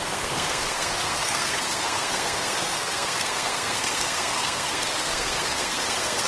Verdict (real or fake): fake